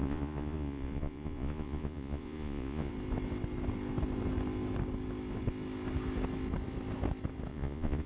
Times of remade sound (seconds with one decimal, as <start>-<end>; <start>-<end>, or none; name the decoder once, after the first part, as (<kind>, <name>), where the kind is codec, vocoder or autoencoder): 0.0-2.9 (vocoder, Vocos); 7.5-8.1